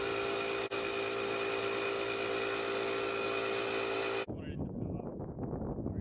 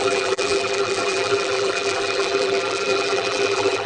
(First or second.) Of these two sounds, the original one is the first